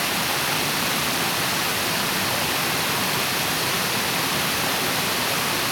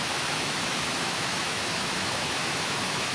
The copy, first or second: second